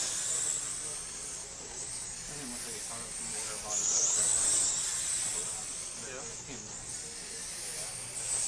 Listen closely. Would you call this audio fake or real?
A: real